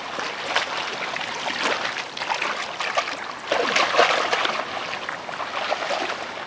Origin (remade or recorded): recorded